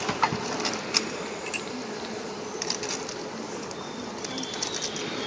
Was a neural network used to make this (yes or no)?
no